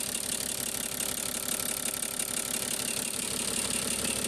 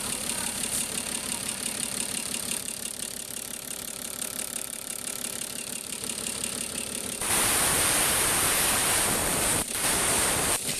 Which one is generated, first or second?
second